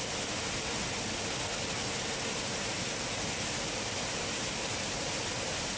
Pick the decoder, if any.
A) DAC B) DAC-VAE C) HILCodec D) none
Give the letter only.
D